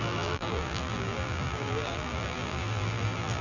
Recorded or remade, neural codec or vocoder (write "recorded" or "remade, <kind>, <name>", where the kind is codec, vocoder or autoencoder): remade, vocoder, BigVGAN v2